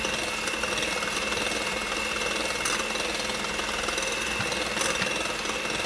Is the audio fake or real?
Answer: real